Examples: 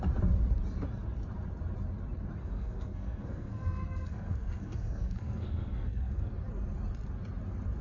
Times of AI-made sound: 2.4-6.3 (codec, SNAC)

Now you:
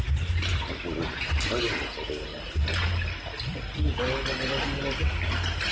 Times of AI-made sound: none

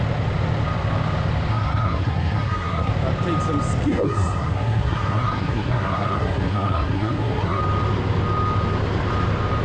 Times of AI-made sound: 1.5-2.9 (codec, SNAC); 3.9-7.6

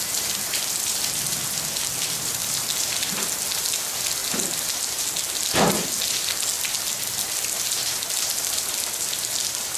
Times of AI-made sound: none

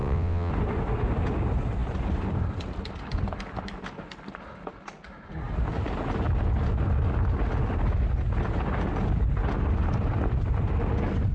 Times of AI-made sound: 0.0-0.5 (vocoder, WaveNeXt)

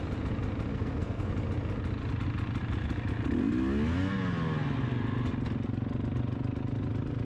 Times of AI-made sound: 0.7-1.3 (codec, SNAC)